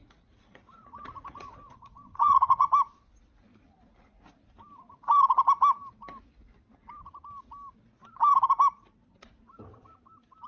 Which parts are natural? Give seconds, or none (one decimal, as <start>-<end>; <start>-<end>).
2.7-10.5

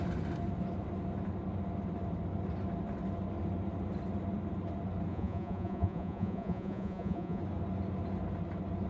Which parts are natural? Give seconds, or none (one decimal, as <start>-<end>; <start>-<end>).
0.0-5.1; 7.4-8.9

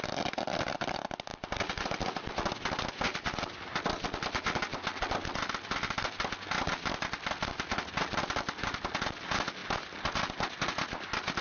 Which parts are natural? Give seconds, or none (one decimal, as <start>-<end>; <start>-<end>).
0.0-11.4

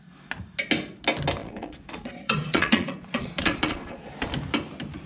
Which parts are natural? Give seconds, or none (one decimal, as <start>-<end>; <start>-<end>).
0.0-1.4; 4.1-5.1

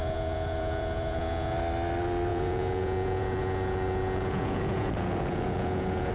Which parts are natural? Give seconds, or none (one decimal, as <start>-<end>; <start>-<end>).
1.6-2.3

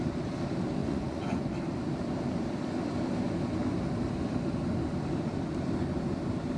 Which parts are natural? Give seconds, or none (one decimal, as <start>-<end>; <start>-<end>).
0.0-0.8; 1.5-6.6